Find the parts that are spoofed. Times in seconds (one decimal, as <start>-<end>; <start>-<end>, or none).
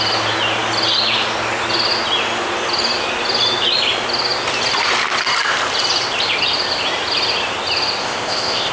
8.0-8.7